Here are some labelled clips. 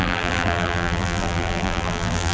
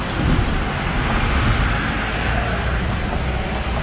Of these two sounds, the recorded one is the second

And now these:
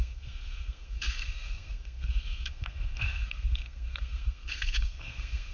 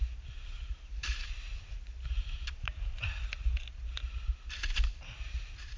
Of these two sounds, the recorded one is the second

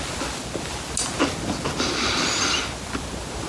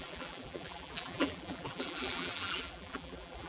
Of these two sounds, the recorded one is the first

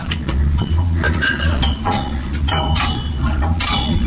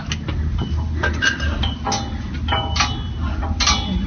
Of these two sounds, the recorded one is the second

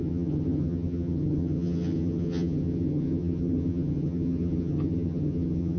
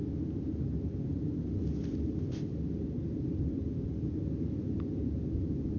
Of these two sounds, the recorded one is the second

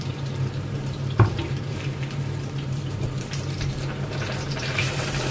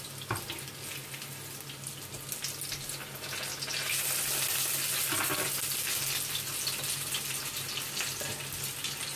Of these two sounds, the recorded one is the second